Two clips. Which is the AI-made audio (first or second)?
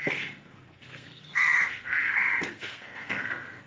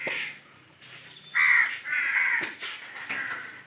first